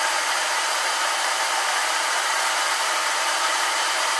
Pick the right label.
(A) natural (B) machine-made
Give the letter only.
B